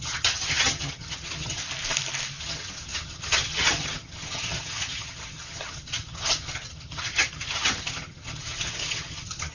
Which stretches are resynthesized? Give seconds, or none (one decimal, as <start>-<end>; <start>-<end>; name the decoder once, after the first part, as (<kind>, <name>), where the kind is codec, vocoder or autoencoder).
0.0-1.6 (vocoder, HiFi-GAN); 2.4-9.5